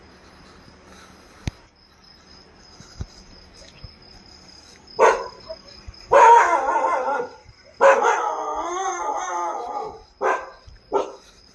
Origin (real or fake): real